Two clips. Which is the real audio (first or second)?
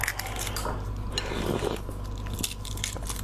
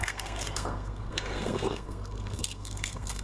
first